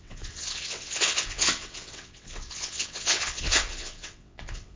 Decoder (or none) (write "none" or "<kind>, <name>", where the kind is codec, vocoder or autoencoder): vocoder, WaveNeXt